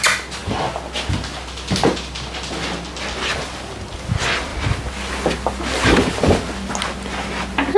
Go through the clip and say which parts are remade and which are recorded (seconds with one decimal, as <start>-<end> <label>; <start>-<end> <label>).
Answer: 0.0-7.8 recorded